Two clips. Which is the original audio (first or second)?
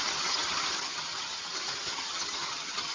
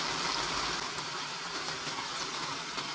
second